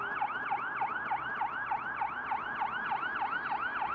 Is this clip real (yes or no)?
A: yes